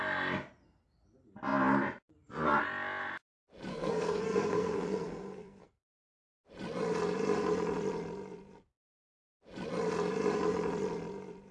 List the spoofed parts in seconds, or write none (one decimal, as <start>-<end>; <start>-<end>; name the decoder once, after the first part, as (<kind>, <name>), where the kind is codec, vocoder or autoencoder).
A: 3.7-6.0 (codec, SNAC)